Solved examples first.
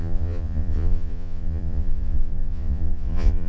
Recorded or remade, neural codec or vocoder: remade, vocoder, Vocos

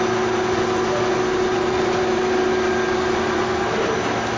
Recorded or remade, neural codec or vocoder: recorded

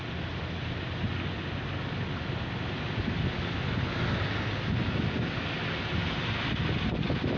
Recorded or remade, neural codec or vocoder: recorded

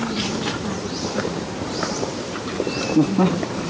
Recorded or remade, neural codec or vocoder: remade, vocoder, BigVGAN v2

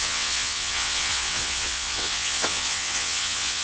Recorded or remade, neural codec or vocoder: remade, vocoder, WaveNeXt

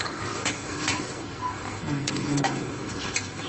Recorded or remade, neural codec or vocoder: remade, codec, SNAC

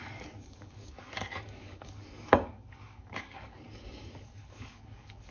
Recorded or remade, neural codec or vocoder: remade, codec, DAC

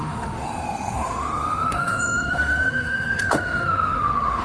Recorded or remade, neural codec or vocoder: remade, autoencoder, DAC-VAE